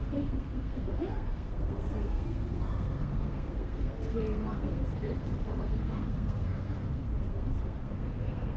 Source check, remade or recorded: remade